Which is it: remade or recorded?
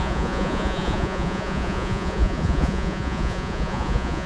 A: remade